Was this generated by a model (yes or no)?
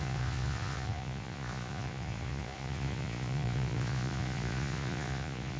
yes